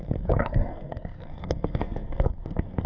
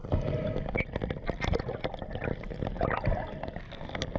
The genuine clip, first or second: second